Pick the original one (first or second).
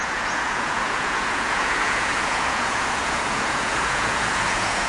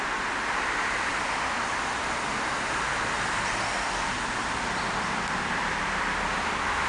second